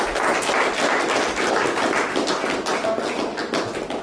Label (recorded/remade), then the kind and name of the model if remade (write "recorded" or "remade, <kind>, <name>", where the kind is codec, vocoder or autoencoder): recorded